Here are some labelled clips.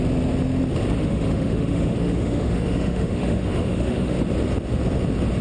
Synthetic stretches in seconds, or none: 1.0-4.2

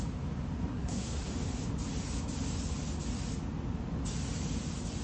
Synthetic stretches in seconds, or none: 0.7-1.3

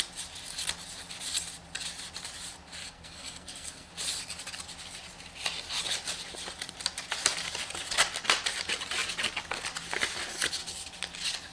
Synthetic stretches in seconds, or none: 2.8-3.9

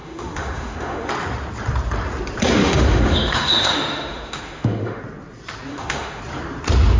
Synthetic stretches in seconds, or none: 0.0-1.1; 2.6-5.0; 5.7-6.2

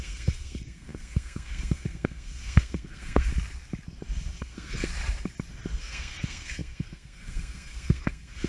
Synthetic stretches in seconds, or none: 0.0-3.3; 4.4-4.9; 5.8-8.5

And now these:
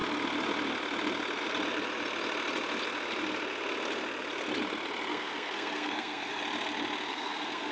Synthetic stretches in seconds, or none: 5.1-6.4; 7.1-7.7

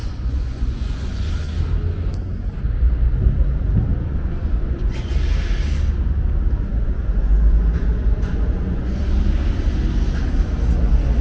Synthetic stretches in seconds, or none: 0.0-1.3; 3.9-5.1; 6.7-9.0

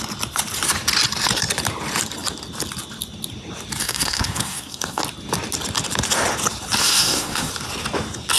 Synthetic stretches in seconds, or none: 3.8-5.0; 6.8-7.5